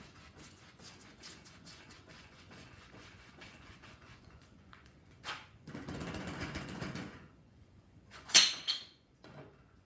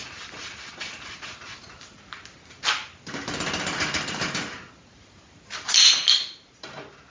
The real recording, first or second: second